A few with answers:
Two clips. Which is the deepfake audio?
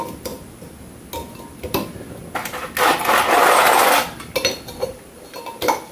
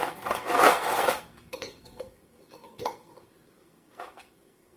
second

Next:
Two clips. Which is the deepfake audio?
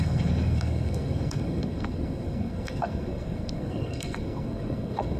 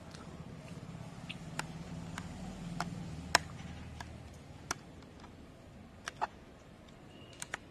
first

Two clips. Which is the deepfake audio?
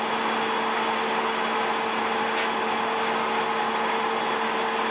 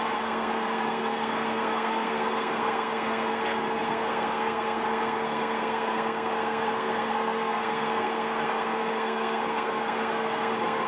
second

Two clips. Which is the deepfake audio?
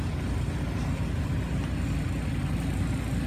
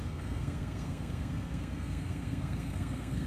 second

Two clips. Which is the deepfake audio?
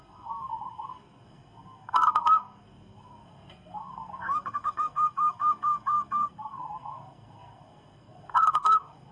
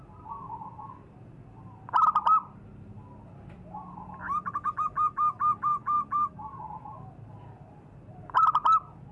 first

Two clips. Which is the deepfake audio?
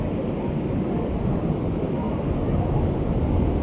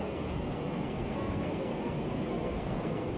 second